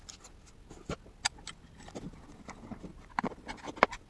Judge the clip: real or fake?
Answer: real